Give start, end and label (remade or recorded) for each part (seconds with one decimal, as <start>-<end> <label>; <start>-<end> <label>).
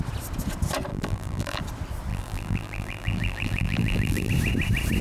0.0-0.9 recorded; 0.9-1.6 remade; 1.6-2.1 recorded; 2.1-4.3 remade; 4.3-5.0 recorded